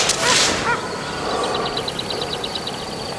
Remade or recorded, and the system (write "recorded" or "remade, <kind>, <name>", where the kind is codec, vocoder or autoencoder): recorded